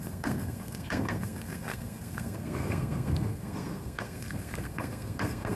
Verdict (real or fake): fake